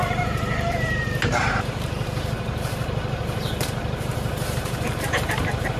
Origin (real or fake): fake